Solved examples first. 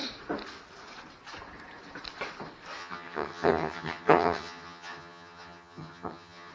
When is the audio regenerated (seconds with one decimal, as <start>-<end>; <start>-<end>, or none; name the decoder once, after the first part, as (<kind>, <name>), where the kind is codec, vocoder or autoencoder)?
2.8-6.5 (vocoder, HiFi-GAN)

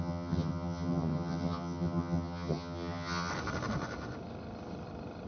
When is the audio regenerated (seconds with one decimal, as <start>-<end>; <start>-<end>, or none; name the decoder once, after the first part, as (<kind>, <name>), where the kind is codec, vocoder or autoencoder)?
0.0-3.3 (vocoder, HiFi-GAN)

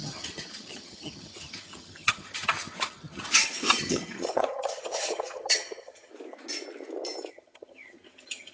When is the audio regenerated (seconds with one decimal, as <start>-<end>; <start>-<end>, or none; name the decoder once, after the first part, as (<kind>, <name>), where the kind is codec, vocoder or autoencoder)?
0.0-6.1 (vocoder, HiFi-GAN); 7.3-8.5

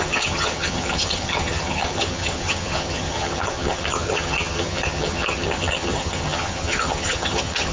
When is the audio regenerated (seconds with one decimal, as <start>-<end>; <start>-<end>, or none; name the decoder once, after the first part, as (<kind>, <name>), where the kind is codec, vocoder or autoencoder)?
0.0-7.7 (vocoder, HiFi-GAN)